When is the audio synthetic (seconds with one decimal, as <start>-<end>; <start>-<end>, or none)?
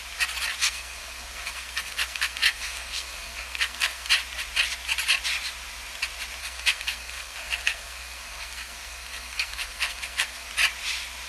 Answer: 0.6-4.1; 6.4-10.5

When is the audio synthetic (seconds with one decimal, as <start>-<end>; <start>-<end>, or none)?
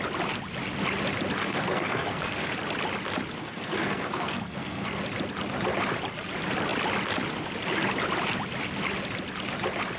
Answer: 1.4-2.5; 3.4-5.0